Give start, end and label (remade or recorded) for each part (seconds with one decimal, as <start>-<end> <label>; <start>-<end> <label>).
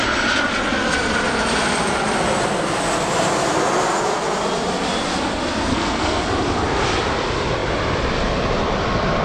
0.0-5.7 recorded; 5.7-6.2 remade; 6.2-9.2 recorded